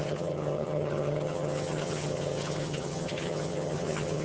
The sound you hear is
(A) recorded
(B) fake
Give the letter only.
B